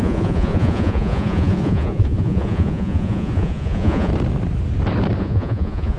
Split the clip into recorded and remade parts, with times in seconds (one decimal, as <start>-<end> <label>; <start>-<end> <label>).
0.0-4.1 remade; 4.1-5.2 recorded; 5.2-6.0 remade